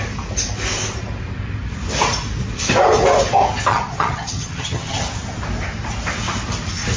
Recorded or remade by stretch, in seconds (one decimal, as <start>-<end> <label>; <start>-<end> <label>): 0.0-3.7 recorded; 3.7-5.0 remade; 5.0-7.0 recorded